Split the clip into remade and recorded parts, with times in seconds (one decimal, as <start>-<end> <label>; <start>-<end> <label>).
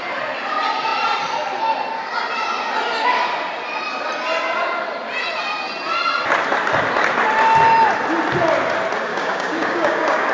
0.0-9.1 recorded; 9.1-10.3 remade